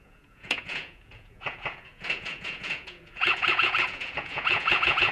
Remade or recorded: remade